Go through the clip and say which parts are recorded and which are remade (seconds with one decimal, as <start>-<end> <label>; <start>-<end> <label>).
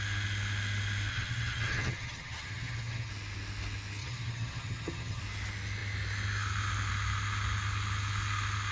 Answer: 0.0-1.1 recorded; 1.1-3.1 remade; 3.1-4.0 recorded; 4.0-5.2 remade; 5.2-8.7 recorded